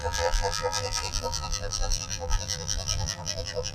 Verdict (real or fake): fake